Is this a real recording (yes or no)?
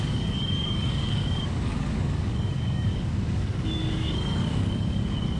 no